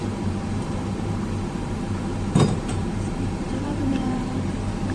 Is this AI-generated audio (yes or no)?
yes